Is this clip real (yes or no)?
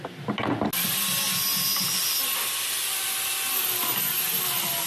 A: yes